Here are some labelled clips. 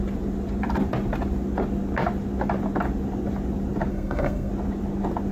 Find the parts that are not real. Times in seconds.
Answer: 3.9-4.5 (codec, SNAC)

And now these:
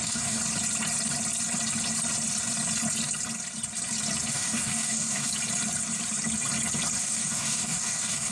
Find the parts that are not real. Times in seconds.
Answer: 0.0-0.4 (codec, DAC); 4.3-5.3; 7.0-8.3

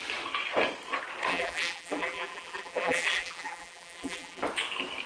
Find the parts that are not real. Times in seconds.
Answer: 1.3-4.4 (vocoder, BigVGAN v2)